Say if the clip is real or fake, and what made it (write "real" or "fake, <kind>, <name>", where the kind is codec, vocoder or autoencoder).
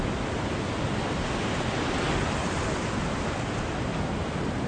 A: real